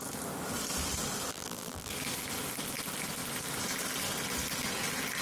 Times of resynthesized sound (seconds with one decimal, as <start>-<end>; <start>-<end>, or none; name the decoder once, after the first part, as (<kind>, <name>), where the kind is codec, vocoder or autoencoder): 1.3-1.9 (vocoder, BigVGAN v2)